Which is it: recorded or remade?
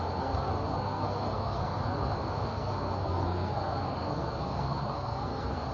remade